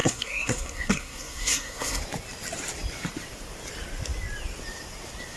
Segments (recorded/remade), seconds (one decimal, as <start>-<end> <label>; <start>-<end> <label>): 0.0-2.0 remade; 2.0-5.4 recorded